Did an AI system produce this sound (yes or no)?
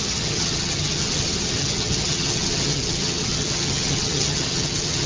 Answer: yes